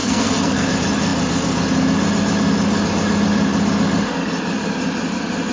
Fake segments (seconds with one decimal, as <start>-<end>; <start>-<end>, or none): 0.0-0.7